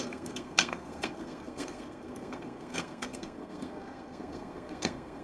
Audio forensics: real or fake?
fake